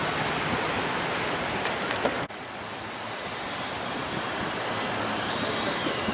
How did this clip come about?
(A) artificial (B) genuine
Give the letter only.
B